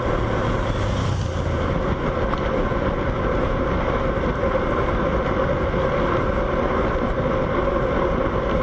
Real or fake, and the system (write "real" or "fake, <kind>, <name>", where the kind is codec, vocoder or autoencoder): real